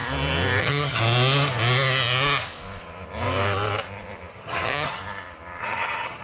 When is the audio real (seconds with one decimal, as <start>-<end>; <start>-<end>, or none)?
0.0-0.6; 1.0-4.3; 5.0-5.6